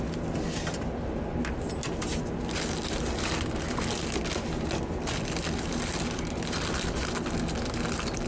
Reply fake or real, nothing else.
real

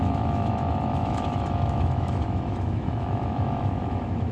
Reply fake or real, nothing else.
fake